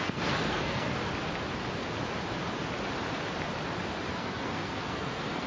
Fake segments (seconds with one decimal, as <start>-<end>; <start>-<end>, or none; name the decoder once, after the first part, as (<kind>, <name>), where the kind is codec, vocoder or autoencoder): 0.0-1.0 (codec, SNAC); 4.1-5.5